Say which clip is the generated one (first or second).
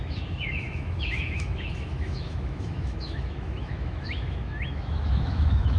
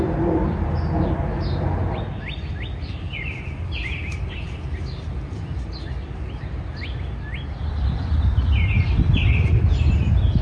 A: first